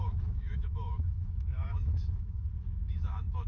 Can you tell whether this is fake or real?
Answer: fake